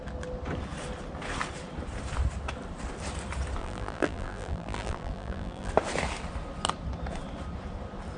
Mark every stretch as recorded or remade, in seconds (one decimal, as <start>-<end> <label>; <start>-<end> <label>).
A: 0.0-3.6 recorded; 3.6-5.7 remade; 5.7-8.2 recorded